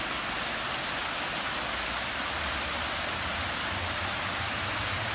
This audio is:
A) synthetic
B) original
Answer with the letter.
B